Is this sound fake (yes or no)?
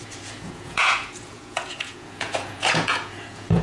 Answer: yes